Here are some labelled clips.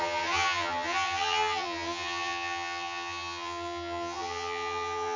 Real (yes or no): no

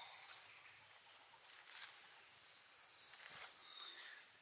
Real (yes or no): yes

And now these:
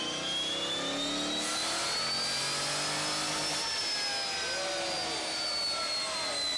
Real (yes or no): yes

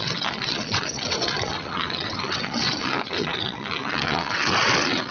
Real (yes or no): no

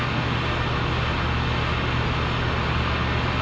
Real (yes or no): yes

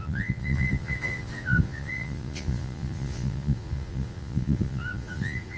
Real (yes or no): no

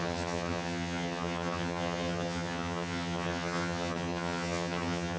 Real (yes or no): no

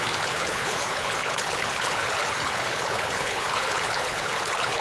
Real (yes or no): no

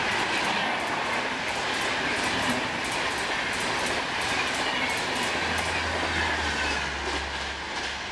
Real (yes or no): yes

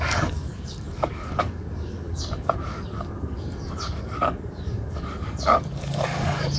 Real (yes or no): no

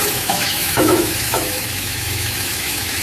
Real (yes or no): no